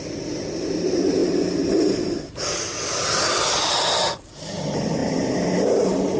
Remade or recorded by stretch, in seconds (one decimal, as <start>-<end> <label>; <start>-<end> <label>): 0.0-6.2 recorded